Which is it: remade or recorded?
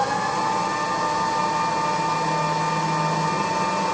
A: recorded